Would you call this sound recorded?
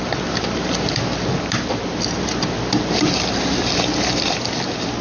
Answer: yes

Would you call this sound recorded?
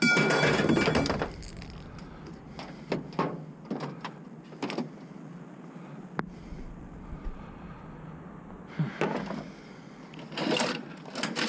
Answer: yes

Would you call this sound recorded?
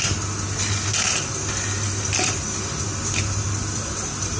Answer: yes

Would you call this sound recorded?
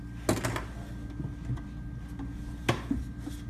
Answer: yes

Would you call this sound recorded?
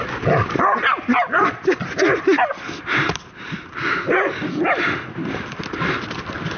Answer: yes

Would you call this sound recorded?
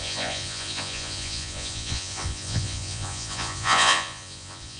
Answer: no